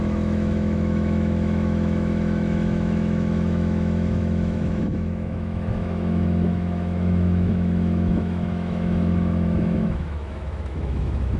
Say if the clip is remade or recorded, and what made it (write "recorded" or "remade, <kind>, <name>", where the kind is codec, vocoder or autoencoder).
remade, autoencoder, DAC-VAE